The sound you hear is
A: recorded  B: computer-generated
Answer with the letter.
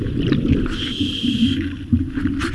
A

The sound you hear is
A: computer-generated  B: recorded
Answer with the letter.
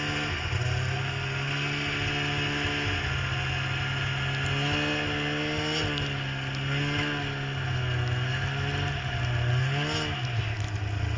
B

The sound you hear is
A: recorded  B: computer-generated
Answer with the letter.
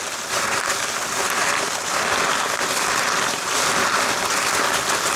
A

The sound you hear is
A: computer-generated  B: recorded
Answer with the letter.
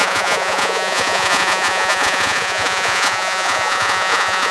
A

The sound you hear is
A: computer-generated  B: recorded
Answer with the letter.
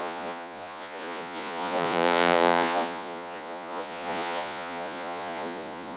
A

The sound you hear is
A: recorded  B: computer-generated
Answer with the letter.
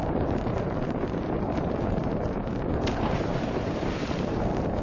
B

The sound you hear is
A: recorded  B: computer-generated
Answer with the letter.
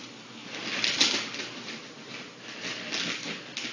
A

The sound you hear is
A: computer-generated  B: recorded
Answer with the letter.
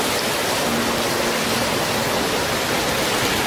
B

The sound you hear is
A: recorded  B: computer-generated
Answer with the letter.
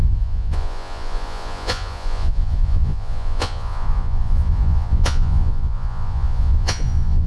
B